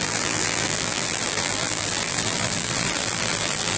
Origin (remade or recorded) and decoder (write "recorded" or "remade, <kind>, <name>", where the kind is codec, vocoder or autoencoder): remade, vocoder, BigVGAN v2